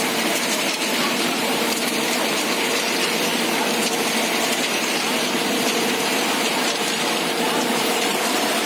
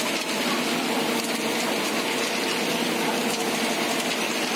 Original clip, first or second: second